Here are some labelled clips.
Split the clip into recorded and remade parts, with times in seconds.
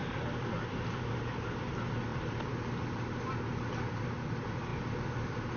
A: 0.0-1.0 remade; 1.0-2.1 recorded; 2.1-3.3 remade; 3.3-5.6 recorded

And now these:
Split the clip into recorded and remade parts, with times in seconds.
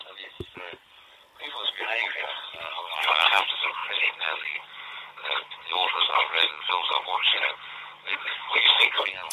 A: 0.0-3.8 remade; 3.8-8.8 recorded; 8.8-9.3 remade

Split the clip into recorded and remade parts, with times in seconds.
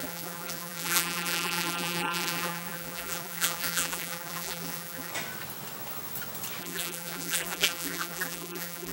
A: 0.0-5.1 remade; 5.1-6.6 recorded; 6.6-8.9 remade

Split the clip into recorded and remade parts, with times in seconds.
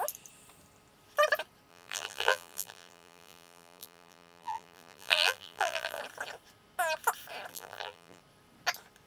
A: 0.0-1.7 recorded; 1.7-6.0 remade; 6.0-7.5 recorded; 7.5-8.2 remade; 8.2-9.1 recorded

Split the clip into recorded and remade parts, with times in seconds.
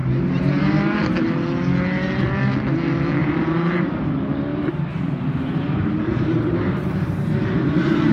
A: 0.0-0.6 remade; 0.6-3.2 recorded; 3.2-3.9 remade; 3.9-4.5 recorded; 4.5-8.1 remade